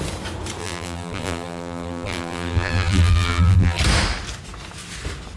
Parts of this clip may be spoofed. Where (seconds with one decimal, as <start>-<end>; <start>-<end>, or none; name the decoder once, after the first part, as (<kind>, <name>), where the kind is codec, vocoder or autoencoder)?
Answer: 0.6-3.8 (vocoder, BigVGAN v2)